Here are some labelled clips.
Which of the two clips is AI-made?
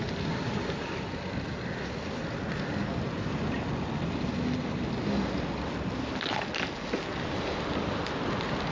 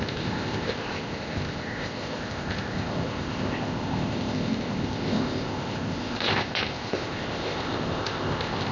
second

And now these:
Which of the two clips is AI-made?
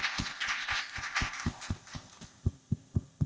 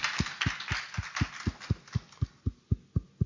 first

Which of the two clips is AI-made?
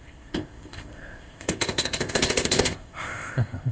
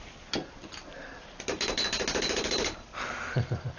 first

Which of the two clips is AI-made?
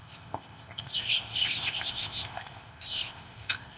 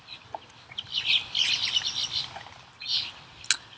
first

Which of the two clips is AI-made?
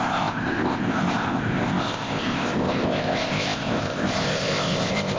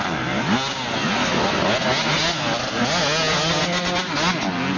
first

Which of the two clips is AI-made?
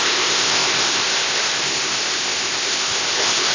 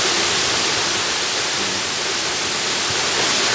first